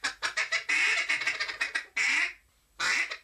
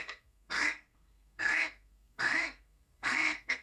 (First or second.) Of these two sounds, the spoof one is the second